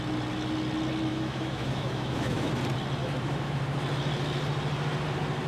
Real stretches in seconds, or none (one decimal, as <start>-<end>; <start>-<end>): 0.0-1.1; 2.5-3.0; 3.6-5.5